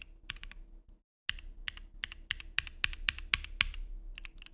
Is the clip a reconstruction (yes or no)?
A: no